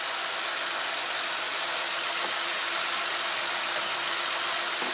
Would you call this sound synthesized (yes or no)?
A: no